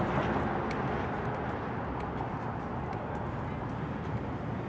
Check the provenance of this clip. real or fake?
real